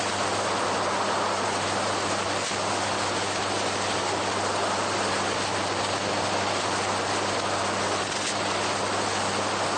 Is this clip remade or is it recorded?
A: recorded